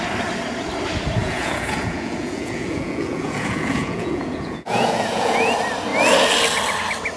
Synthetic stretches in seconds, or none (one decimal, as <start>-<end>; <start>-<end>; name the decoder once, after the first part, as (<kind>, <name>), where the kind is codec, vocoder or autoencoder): 1.2-5.5 (vocoder, Vocos)